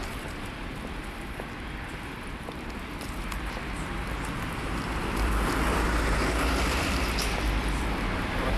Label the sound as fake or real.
fake